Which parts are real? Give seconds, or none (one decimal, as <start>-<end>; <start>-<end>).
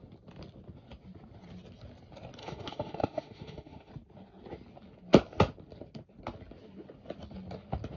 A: 0.0-2.4; 3.9-8.0